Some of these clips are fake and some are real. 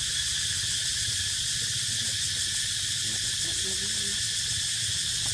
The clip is real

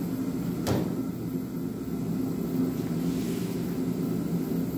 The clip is real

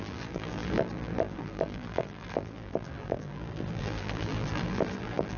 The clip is fake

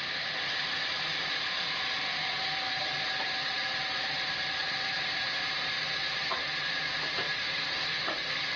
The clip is fake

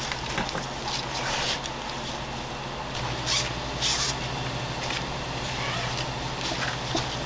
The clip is real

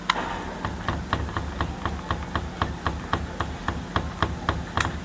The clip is real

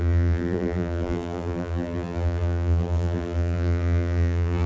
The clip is fake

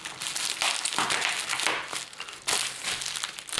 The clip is real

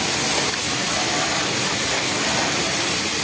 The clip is real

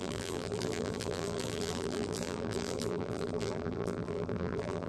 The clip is fake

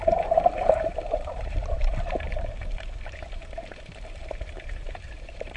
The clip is fake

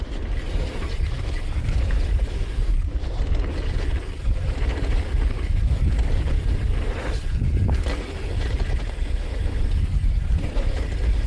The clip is fake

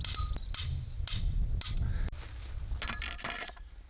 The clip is real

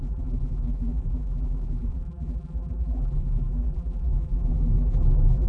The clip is fake